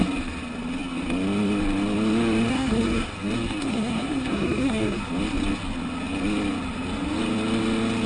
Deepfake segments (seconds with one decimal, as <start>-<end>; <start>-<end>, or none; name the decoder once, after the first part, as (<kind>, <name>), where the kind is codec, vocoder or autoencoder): 2.5-3.1 (codec, SNAC); 3.6-5.0